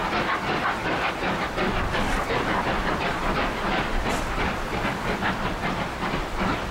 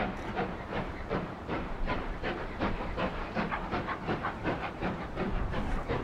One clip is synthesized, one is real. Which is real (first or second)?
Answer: first